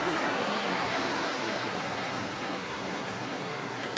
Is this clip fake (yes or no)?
yes